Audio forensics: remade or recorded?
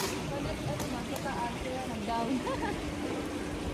recorded